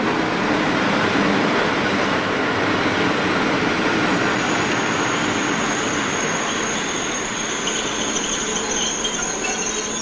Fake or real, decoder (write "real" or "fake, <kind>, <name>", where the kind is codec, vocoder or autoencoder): real